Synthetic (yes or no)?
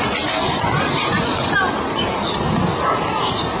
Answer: no